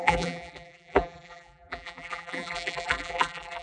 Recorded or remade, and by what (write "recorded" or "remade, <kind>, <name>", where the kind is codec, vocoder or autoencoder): remade, vocoder, BigVGAN v2